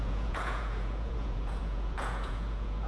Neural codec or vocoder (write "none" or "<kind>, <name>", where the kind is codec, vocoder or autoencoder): vocoder, Vocos